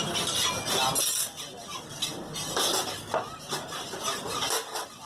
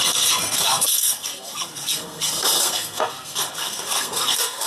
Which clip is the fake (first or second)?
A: second